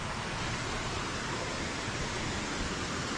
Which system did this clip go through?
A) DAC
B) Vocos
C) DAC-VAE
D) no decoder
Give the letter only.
D